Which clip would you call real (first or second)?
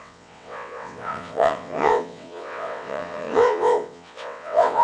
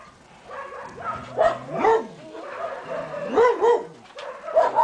second